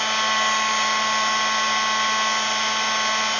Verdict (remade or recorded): recorded